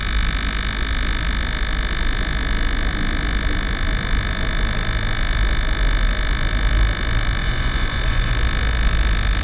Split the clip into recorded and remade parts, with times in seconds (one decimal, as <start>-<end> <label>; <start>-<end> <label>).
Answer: 0.0-7.4 recorded; 7.4-8.3 remade; 8.3-9.4 recorded